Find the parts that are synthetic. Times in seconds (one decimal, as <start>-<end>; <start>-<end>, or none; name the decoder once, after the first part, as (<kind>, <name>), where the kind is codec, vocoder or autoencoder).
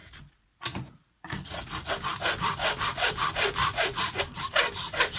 0.0-1.9 (vocoder, Vocos); 3.6-4.2